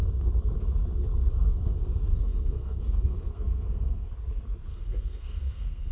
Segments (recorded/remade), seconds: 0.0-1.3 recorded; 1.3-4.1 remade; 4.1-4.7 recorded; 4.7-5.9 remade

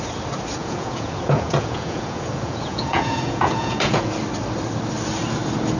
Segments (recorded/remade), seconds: 0.0-0.6 recorded; 0.6-4.1 remade; 4.1-5.8 recorded

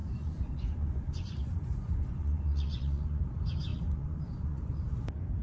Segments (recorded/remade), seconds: 0.0-3.2 remade; 3.2-3.7 recorded; 3.7-4.8 remade; 4.8-5.4 recorded

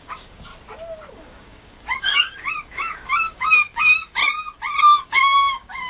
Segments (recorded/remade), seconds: 0.0-0.5 remade; 0.5-1.1 recorded; 1.1-4.2 remade; 4.2-4.8 recorded; 4.8-5.9 remade

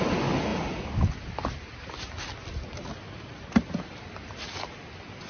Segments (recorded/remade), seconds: 0.0-5.3 recorded